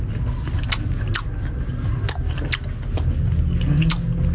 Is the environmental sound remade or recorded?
recorded